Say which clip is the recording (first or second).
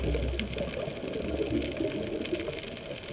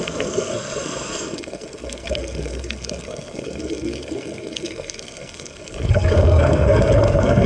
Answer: first